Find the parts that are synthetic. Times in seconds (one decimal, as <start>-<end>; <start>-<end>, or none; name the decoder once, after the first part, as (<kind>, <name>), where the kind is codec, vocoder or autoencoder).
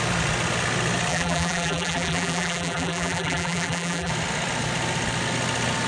1.1-4.1 (vocoder, BigVGAN v2)